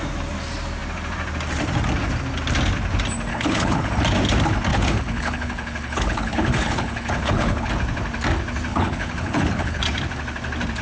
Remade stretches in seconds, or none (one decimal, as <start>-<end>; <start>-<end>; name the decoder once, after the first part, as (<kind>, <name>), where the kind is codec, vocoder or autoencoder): 3.3-3.9 (codec, HILCodec); 4.7-7.7; 8.7-9.8